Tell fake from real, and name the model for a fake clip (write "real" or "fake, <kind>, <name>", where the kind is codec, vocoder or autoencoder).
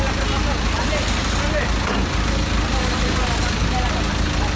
real